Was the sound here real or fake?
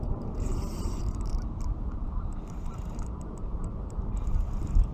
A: fake